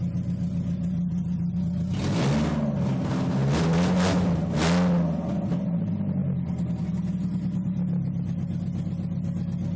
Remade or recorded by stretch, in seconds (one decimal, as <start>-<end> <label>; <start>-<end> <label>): 0.0-9.8 recorded